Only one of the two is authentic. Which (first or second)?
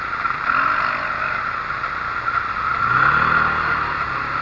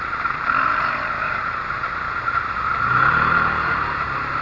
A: first